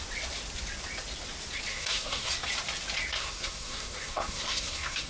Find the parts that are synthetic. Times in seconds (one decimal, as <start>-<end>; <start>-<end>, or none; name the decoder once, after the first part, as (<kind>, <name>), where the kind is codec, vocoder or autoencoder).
1.7-2.3 (codec, SNAC); 3.1-5.1